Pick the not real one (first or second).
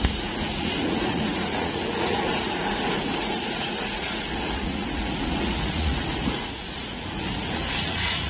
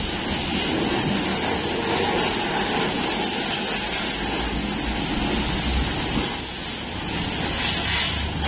first